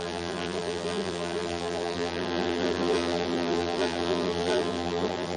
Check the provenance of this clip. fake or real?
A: fake